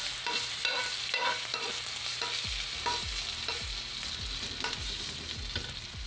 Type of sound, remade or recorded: recorded